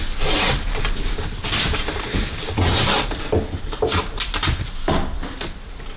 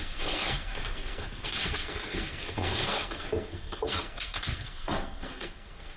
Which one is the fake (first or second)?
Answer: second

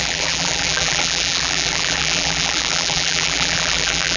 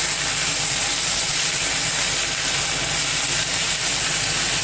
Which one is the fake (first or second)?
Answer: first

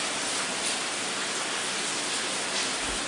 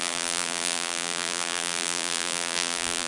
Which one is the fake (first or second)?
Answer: second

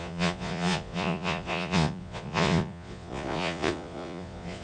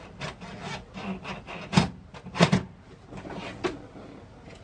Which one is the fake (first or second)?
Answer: first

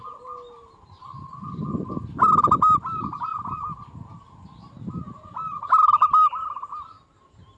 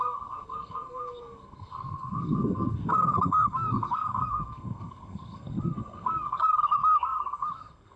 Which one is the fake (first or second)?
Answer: second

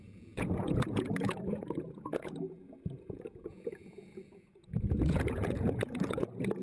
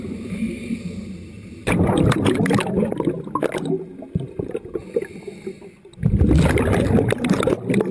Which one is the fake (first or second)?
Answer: first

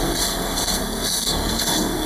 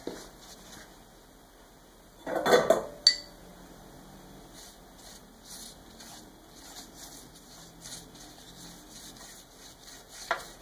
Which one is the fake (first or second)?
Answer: first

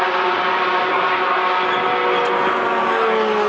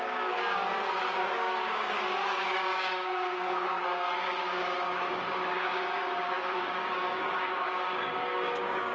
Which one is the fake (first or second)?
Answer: second